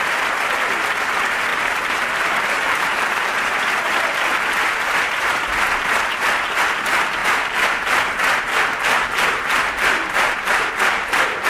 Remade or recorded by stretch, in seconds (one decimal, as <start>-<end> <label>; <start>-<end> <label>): 0.0-1.5 recorded; 1.5-3.6 remade; 3.6-11.5 recorded